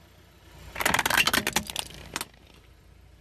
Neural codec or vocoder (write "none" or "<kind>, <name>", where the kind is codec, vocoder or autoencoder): none